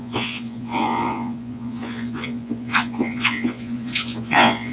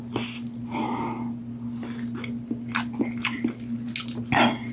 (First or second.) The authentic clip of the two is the second